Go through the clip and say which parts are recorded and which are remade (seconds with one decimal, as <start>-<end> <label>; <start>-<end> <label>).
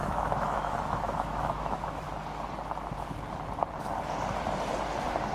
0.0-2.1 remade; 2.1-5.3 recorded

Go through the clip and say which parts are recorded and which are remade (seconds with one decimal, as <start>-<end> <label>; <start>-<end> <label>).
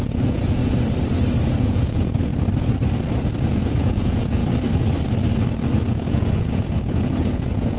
0.0-0.6 remade; 0.6-1.6 recorded; 1.6-2.3 remade; 2.3-3.5 recorded; 3.5-4.4 remade; 4.4-5.9 recorded; 5.9-7.8 remade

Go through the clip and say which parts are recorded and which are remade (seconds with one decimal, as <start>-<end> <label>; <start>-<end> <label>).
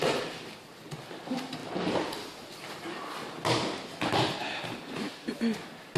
0.0-6.0 recorded